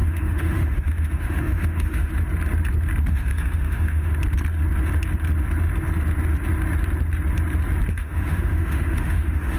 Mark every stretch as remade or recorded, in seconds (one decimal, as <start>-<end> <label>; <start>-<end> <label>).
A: 0.0-2.1 remade; 2.1-3.1 recorded; 3.1-4.1 remade; 4.1-7.9 recorded; 7.9-9.6 remade